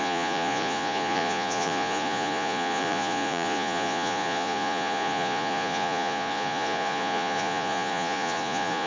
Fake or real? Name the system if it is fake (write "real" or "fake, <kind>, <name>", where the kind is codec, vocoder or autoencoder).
fake, vocoder, Vocos